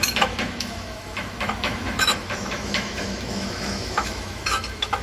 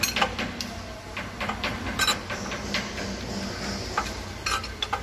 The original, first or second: second